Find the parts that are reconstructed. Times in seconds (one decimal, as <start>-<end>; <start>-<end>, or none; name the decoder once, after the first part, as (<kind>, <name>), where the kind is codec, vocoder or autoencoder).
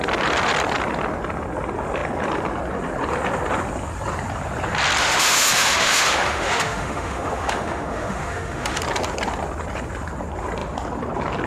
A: 5.0-8.8 (autoencoder, DAC-VAE)